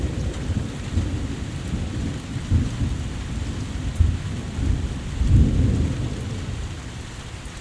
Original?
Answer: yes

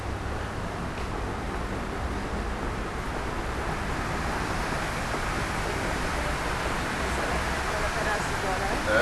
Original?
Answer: yes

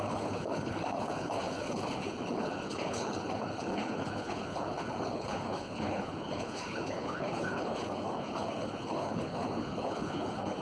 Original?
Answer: no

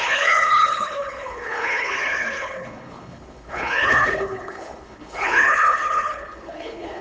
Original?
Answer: no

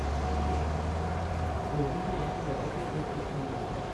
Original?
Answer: yes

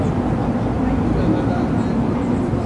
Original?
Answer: yes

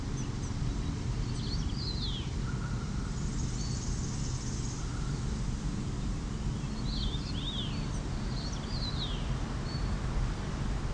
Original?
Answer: yes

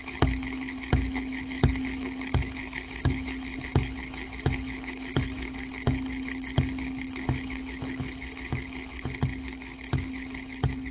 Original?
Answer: no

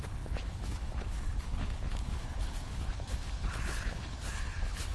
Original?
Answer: no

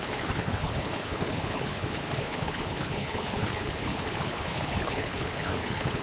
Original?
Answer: no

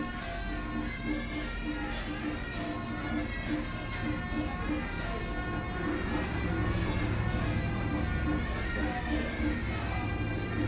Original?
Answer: yes